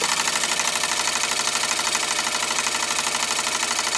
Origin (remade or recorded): recorded